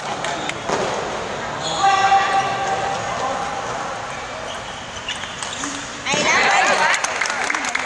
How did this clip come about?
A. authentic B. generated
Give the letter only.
A